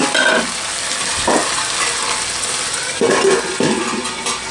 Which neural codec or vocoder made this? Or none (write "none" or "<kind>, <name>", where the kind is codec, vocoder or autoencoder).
none